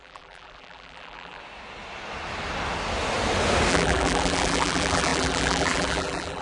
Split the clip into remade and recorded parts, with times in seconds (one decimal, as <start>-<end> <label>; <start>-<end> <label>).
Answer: 0.0-1.4 remade; 1.4-3.7 recorded; 3.7-6.4 remade